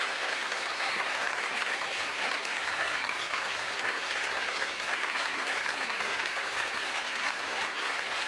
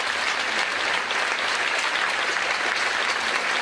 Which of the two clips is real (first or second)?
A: second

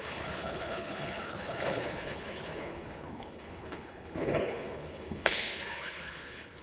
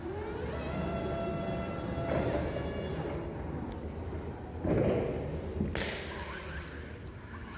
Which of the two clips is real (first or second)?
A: second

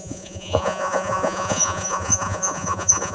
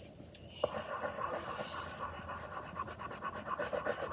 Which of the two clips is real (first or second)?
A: second